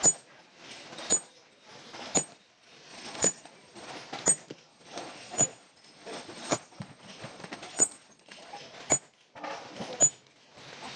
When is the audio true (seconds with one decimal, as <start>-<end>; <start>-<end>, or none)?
0.0-2.9; 3.9-4.7; 8.6-11.0